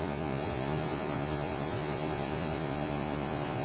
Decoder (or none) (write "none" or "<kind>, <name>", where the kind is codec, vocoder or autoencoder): vocoder, Vocos